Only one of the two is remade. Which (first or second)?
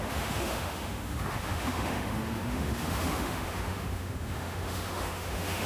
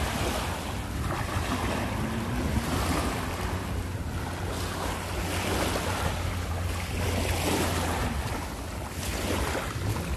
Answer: first